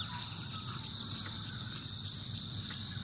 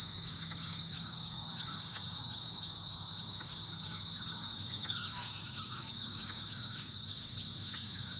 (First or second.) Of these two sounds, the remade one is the second